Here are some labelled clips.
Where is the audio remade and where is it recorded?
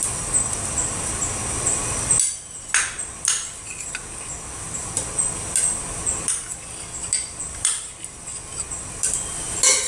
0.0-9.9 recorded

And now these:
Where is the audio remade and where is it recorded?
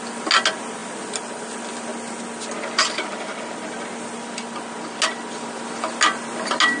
0.0-6.8 recorded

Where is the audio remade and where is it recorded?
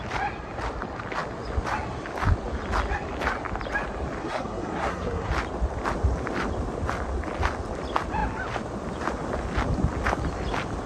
0.0-4.2 recorded; 4.2-5.3 remade; 5.3-10.9 recorded